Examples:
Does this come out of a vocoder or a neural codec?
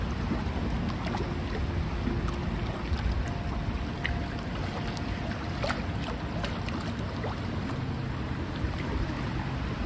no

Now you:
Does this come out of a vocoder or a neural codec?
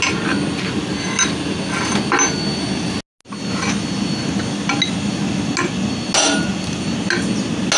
no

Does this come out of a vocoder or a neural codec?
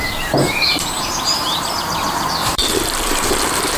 yes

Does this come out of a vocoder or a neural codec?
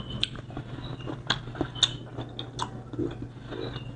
no